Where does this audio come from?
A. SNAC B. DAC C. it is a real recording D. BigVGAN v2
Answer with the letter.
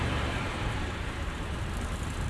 D